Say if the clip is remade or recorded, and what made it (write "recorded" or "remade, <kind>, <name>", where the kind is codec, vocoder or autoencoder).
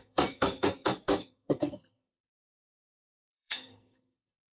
remade, codec, SNAC